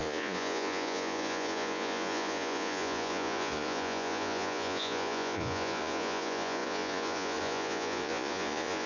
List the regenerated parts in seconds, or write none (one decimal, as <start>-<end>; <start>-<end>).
0.0-8.9